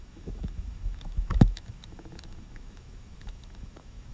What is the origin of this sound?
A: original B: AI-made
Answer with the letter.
B